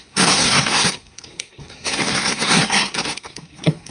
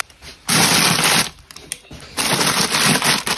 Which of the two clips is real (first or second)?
second